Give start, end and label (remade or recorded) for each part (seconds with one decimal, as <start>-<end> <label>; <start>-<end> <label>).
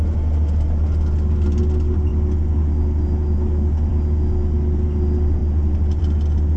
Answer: 0.0-6.6 recorded